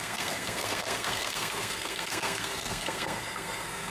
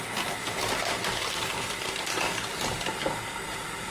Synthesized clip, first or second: first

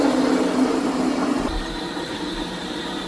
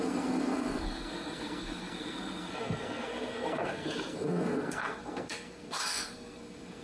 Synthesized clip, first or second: second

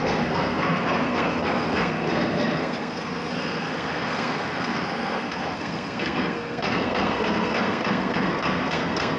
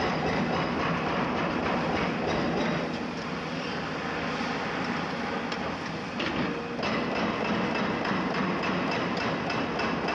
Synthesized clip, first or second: first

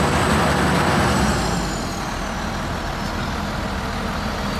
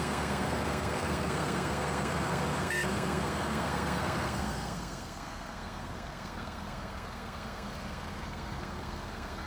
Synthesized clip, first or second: second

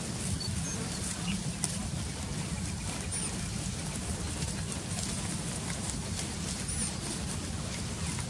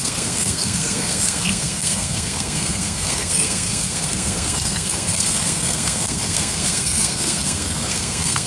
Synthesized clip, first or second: second